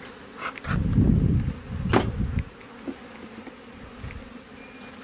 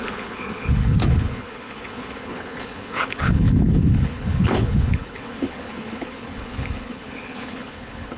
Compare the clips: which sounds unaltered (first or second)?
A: first